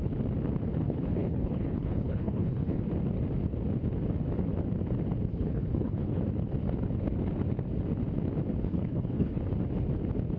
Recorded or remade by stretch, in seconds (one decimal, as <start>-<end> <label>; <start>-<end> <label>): 0.0-0.8 recorded; 0.8-2.8 remade; 2.8-5.3 recorded; 5.3-6.2 remade; 6.2-8.6 recorded; 8.6-9.4 remade; 9.4-10.4 recorded